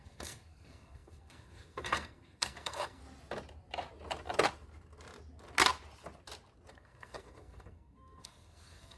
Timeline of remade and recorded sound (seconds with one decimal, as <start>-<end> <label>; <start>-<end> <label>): 0.0-3.0 remade; 3.0-6.7 recorded; 6.7-9.0 remade